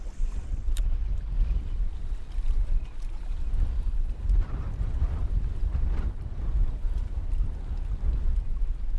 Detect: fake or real real